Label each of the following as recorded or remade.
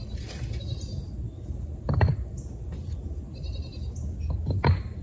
recorded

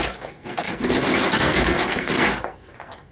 remade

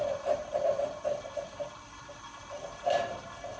recorded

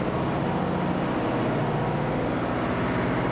recorded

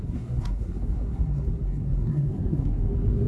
remade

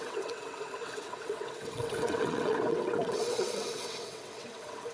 remade